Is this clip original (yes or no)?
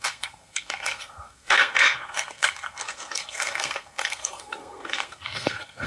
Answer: no